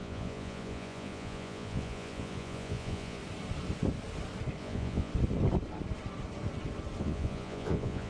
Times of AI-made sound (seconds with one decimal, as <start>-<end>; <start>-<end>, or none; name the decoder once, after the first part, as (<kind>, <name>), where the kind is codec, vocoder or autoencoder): 0.0-3.2 (vocoder, Vocos); 4.6-5.1; 7.0-8.1

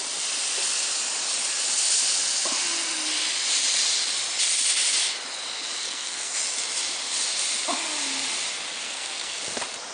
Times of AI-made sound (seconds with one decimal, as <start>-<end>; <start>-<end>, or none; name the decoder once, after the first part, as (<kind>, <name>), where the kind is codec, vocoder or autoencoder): 5.8-6.3 (codec, SNAC); 8.8-9.4

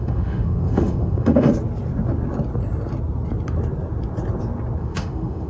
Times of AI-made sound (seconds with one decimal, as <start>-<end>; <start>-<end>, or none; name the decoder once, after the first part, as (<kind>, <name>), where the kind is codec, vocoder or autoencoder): 0.0-1.5 (autoencoder, DAC-VAE); 4.8-5.5

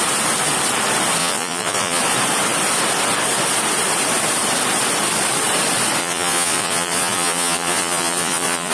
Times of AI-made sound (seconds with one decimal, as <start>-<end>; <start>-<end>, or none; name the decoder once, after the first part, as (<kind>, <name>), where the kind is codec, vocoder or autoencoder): 1.2-2.0 (vocoder, Vocos); 6.0-8.7

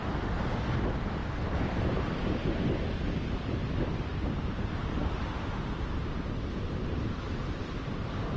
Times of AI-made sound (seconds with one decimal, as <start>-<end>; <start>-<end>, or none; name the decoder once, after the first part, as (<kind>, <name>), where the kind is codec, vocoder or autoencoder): 1.2-2.0 (vocoder, BigVGAN v2); 4.1-5.3; 6.0-7.1